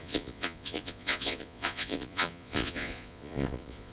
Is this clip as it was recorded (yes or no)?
no